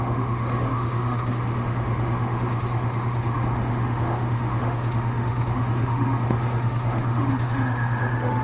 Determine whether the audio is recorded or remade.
remade